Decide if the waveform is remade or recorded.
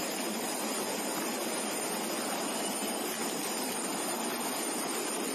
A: recorded